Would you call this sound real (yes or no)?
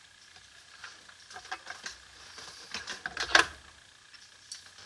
yes